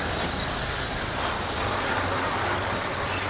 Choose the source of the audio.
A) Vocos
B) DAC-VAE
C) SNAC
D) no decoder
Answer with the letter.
D